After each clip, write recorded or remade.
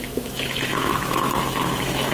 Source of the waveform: remade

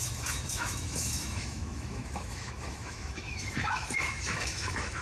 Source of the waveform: remade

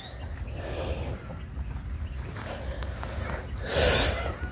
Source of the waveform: recorded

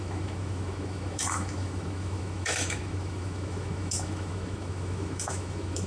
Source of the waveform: remade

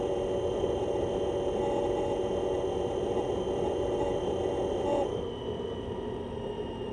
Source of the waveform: recorded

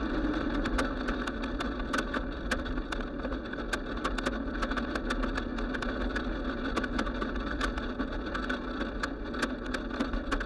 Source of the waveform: recorded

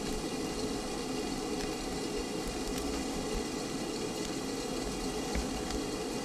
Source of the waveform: recorded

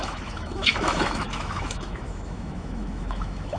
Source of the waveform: remade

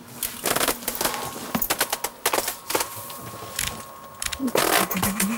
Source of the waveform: recorded